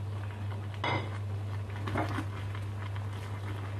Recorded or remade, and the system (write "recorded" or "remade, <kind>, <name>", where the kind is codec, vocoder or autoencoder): recorded